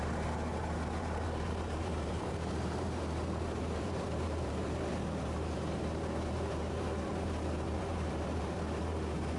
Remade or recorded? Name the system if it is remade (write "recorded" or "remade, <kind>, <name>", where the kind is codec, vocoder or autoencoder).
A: remade, vocoder, BigVGAN v2